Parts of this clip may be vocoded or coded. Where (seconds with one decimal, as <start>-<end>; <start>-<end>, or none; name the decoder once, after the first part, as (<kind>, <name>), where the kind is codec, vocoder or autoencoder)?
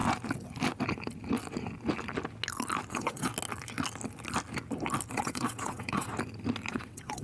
2.9-3.3 (vocoder, WaveNeXt); 5.1-6.1; 6.7-7.2